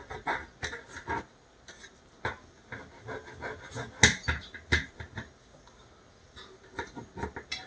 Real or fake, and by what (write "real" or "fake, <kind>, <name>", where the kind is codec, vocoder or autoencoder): real